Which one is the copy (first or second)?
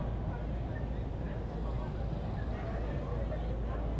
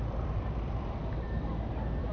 second